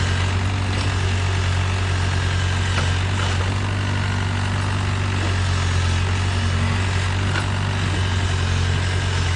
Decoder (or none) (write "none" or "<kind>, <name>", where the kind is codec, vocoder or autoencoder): none